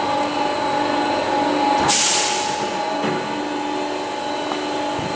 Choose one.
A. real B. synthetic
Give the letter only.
A